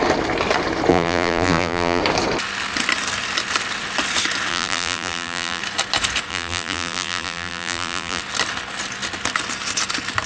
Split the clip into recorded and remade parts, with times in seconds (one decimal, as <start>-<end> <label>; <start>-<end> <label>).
0.0-0.9 recorded; 0.9-2.0 remade; 2.0-4.5 recorded; 4.5-5.6 remade; 5.6-6.3 recorded; 6.3-8.2 remade; 8.2-10.3 recorded